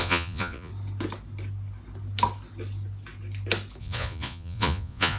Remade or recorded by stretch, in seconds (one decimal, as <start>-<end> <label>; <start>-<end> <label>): 0.0-0.7 remade; 0.7-3.8 recorded; 3.8-5.2 remade

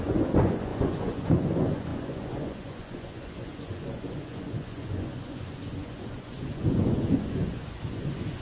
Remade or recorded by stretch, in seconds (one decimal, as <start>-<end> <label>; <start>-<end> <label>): 0.0-8.4 remade

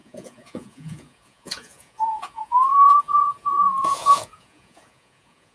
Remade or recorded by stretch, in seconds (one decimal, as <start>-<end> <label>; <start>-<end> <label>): 0.0-5.5 remade

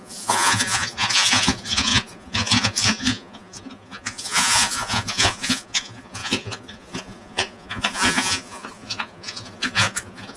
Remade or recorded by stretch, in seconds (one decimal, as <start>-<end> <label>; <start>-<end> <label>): 0.0-10.4 remade

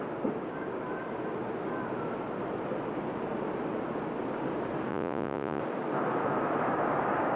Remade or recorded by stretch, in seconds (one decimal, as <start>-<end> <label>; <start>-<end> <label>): 0.0-4.9 recorded; 4.9-5.6 remade; 5.6-7.4 recorded

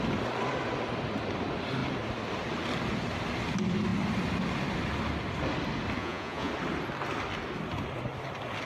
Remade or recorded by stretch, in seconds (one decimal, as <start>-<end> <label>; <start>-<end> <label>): 0.0-6.0 recorded; 6.0-6.5 remade; 6.5-8.6 recorded

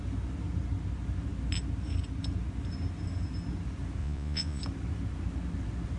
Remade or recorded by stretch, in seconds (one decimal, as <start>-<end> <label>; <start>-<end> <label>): 0.0-4.0 recorded; 4.0-4.6 remade; 4.6-6.0 recorded